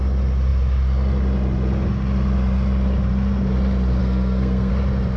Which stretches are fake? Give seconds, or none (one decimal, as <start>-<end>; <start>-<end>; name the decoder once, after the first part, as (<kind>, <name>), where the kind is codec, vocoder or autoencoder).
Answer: 4.0-4.7 (codec, SNAC)